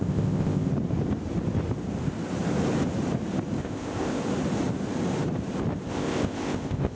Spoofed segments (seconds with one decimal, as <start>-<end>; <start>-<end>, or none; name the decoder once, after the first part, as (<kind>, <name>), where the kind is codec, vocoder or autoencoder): 0.0-0.7 (codec, ZipCodec); 3.6-4.2; 5.9-7.0